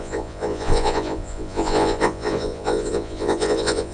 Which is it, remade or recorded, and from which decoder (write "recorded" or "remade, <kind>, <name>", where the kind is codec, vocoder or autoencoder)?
remade, vocoder, Vocos